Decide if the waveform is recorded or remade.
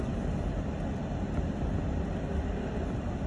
recorded